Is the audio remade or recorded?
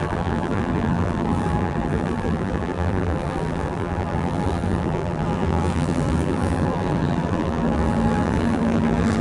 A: remade